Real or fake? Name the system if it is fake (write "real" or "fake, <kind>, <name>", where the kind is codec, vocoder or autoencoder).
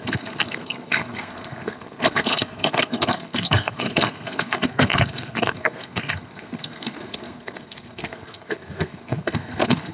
fake, codec, SNAC